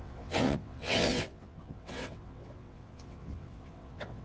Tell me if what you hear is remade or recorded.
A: remade